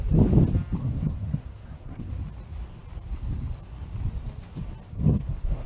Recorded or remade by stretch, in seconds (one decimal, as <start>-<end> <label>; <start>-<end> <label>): 0.0-0.8 recorded; 0.8-2.1 remade; 2.1-4.9 recorded; 4.9-5.7 remade